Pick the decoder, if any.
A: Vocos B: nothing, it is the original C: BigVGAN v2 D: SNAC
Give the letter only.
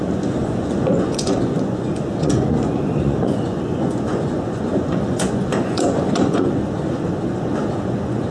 A